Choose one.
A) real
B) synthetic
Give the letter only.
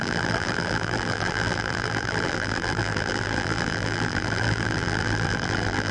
B